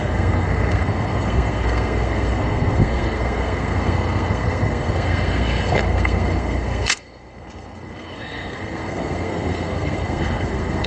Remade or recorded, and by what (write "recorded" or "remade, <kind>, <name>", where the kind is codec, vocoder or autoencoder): remade, codec, SNAC